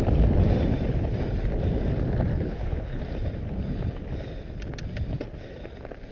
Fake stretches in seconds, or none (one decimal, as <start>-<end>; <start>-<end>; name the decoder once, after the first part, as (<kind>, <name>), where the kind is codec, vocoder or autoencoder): 2.3-3.0 (codec, HILCodec)